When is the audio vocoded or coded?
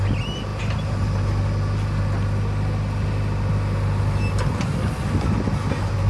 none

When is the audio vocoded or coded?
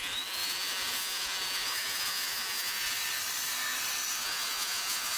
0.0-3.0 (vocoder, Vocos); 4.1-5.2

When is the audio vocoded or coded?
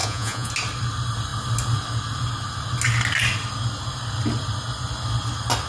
0.0-0.5 (vocoder, Vocos)